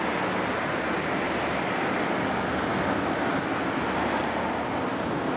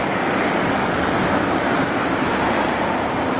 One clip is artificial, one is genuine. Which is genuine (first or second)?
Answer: first